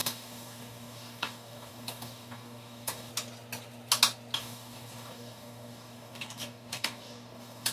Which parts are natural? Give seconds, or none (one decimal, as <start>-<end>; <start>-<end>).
3.1-4.4